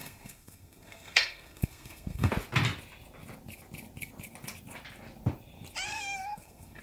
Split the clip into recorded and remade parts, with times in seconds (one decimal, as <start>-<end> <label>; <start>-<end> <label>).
0.0-2.3 remade; 2.3-5.9 recorded; 5.9-6.8 remade